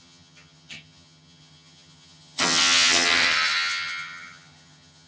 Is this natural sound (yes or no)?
no